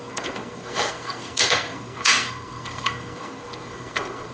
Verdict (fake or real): fake